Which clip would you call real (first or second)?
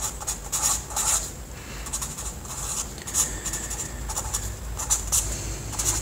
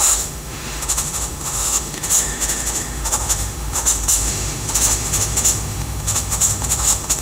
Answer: first